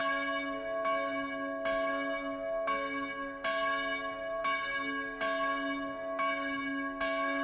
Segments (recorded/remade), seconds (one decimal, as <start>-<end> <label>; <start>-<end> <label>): 0.0-7.4 recorded